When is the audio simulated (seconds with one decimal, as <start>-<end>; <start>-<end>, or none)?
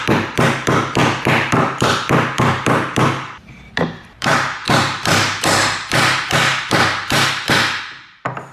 0.0-8.5